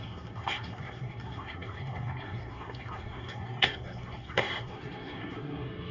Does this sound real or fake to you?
fake